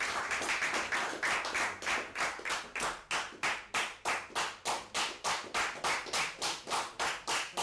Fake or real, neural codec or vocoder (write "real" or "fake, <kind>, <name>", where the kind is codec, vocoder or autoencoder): real